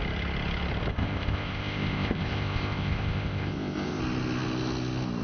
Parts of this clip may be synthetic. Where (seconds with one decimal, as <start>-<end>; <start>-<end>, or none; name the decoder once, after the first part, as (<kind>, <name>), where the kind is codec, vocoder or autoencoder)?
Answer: 0.9-4.0 (codec, ZipCodec)